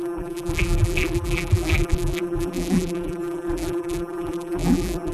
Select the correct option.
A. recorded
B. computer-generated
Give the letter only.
B